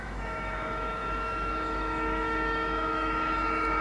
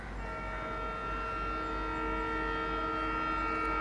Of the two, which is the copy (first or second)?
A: first